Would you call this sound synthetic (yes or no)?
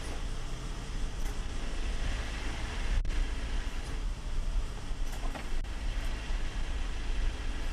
yes